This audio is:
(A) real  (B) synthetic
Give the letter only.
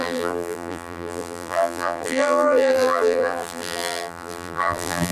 B